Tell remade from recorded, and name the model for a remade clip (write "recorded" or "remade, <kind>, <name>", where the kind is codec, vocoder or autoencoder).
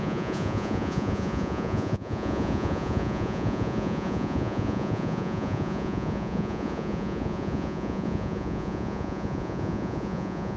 remade, vocoder, Vocos